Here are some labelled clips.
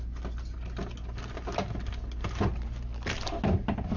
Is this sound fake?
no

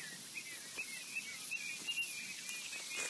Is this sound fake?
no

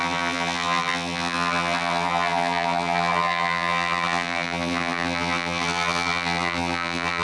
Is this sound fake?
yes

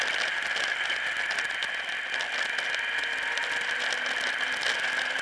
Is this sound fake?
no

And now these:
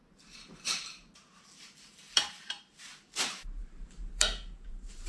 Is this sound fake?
yes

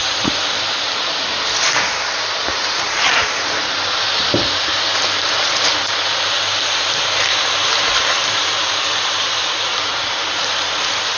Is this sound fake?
yes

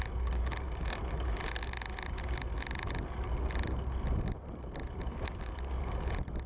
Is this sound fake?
no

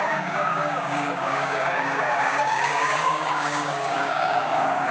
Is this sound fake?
yes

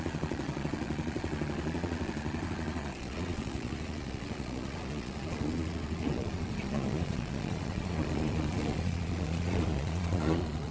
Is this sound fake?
yes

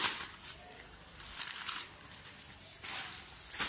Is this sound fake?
no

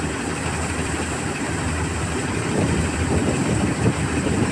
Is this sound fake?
yes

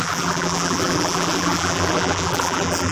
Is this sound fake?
yes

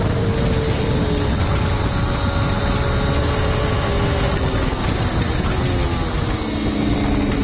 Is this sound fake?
no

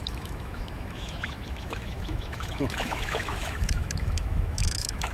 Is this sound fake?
yes